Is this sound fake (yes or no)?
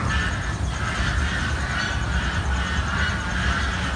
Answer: no